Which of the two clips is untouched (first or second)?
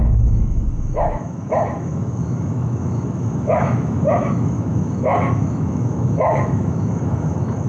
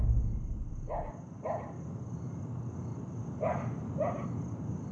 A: second